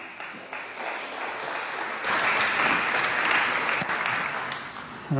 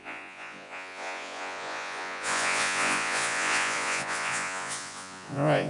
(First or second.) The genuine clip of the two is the first